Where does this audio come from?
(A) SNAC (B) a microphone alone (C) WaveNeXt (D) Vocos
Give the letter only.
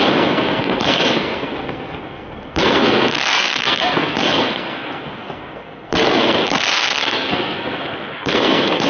A